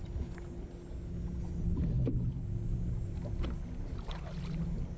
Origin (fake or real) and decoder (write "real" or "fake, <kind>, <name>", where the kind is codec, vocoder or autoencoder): real